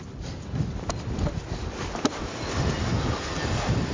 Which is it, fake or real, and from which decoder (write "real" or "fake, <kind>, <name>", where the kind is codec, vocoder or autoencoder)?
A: real